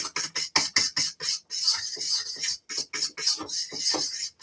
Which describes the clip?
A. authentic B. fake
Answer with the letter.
A